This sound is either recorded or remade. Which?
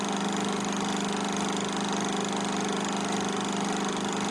recorded